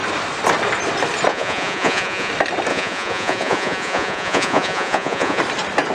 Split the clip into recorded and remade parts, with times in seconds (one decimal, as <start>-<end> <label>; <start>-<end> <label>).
0.0-1.3 recorded; 1.3-2.3 remade; 2.3-2.7 recorded; 2.7-5.4 remade; 5.4-5.9 recorded